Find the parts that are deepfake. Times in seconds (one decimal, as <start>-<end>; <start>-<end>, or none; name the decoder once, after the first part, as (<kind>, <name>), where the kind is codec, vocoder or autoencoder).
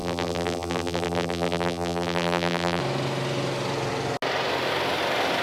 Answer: 0.0-2.8 (vocoder, BigVGAN v2)